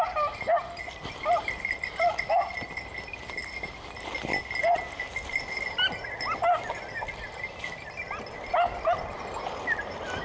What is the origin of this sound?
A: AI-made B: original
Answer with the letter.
B